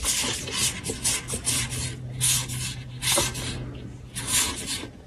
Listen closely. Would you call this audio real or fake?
real